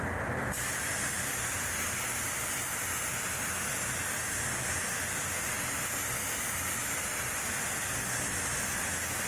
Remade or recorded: recorded